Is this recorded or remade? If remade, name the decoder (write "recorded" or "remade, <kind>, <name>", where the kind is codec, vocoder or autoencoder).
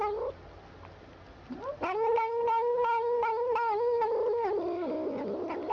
recorded